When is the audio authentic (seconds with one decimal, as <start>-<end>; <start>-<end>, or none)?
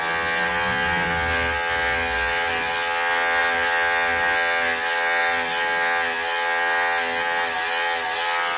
0.0-8.6